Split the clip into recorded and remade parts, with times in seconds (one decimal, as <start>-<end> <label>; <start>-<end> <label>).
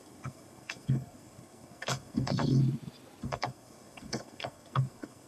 0.0-2.6 remade; 2.6-3.2 recorded; 3.2-5.3 remade